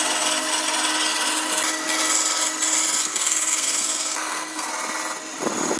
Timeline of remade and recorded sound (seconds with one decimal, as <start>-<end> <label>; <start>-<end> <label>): 0.0-3.0 recorded; 3.0-4.7 remade; 4.7-5.8 recorded